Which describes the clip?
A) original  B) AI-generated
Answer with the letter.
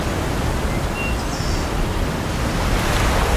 A